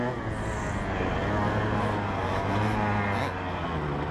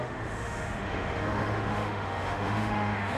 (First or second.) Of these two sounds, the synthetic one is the second